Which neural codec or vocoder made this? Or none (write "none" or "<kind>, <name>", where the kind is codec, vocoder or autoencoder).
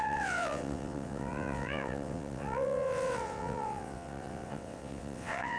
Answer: vocoder, WaveNeXt